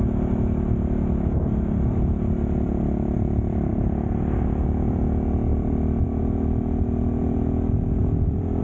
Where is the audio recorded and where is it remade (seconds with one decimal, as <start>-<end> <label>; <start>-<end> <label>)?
0.0-3.7 recorded; 3.7-4.2 remade; 4.2-5.5 recorded; 5.5-6.2 remade; 6.2-8.0 recorded; 8.0-8.6 remade